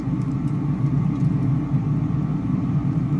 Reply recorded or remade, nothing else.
recorded